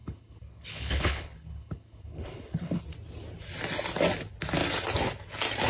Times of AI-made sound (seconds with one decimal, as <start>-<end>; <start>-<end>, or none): 0.0-2.8